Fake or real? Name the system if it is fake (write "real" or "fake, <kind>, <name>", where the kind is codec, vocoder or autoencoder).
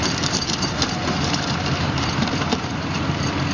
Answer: fake, vocoder, BigVGAN v2